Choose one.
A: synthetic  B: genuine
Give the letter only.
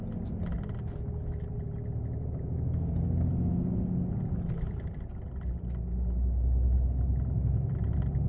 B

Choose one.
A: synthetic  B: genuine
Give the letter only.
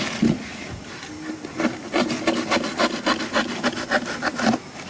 B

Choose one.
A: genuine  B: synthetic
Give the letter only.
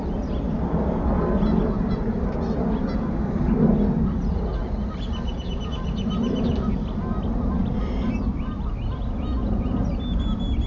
A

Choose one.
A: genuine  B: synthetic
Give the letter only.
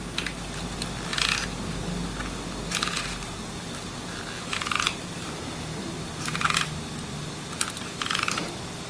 A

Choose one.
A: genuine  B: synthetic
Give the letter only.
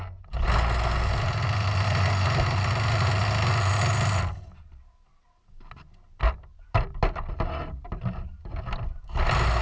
A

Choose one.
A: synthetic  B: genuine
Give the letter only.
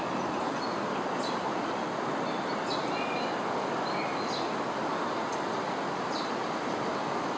B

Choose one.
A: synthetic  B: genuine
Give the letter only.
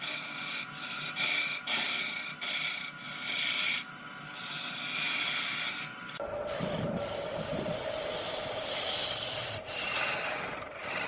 B